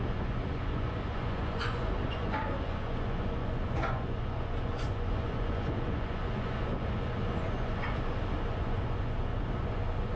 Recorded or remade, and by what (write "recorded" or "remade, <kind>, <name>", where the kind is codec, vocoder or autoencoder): remade, vocoder, Vocos